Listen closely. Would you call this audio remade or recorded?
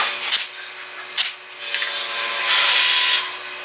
recorded